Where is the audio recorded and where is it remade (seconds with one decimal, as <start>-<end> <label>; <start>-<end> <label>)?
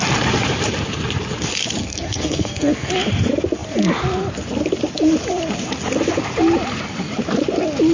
0.0-1.8 recorded; 1.8-2.9 remade; 2.9-7.9 recorded